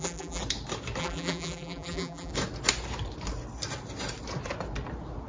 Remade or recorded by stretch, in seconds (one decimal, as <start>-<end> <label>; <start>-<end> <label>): 0.0-0.4 remade; 0.4-1.0 recorded; 1.0-2.3 remade; 2.3-5.3 recorded